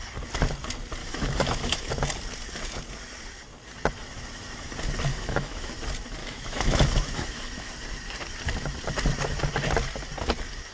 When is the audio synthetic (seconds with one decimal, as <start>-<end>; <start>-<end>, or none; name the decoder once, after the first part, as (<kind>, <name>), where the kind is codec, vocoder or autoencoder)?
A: 1.0-1.9 (autoencoder, DAC-VAE); 5.1-5.7; 6.2-7.7